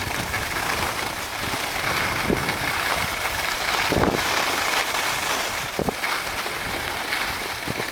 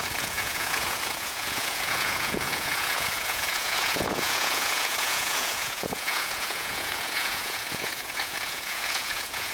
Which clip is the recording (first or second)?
first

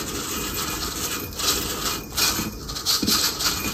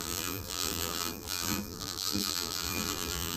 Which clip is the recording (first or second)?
first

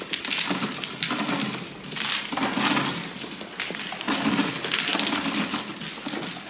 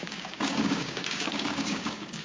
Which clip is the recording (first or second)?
first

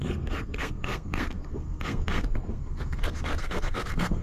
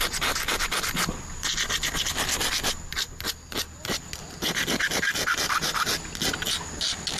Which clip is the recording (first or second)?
second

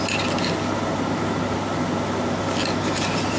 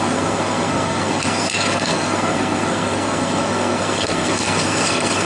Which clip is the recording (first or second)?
first